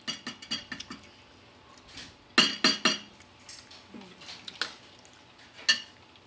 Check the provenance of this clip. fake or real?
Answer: real